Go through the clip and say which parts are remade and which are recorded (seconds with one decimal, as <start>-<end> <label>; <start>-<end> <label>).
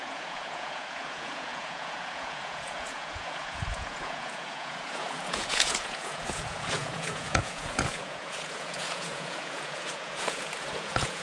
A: 0.0-11.2 remade